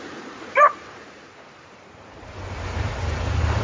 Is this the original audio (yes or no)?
no